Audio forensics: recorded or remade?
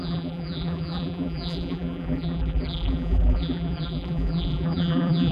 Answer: remade